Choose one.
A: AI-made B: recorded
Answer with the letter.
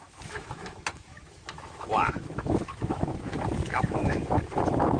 A